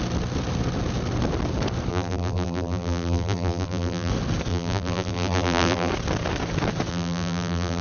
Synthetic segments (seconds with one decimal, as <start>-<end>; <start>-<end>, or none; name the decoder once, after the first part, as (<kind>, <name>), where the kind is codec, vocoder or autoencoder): 1.9-4.1 (vocoder, BigVGAN v2); 4.5-5.9; 6.9-7.8